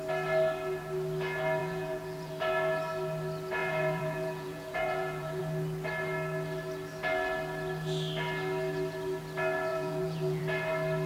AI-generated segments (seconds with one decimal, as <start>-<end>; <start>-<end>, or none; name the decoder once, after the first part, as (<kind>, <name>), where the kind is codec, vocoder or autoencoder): 1.6-2.3 (vocoder, Vocos); 3.6-5.4; 9.7-10.4